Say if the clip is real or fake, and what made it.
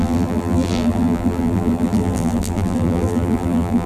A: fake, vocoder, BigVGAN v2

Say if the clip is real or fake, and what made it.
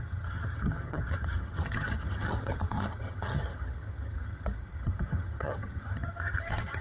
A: fake, vocoder, HiFi-GAN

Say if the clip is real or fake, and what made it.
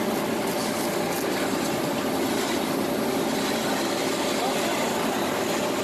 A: real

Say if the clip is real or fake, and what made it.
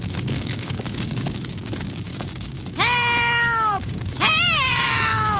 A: fake, codec, DAC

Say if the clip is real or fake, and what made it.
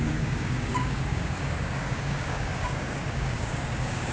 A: fake, codec, DAC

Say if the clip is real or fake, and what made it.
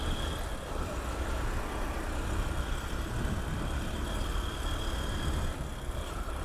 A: real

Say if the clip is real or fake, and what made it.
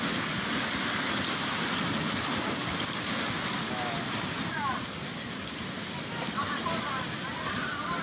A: real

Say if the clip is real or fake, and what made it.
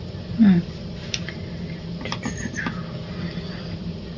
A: real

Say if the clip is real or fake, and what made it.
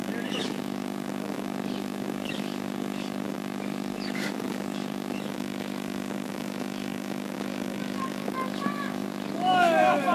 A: fake, codec, DAC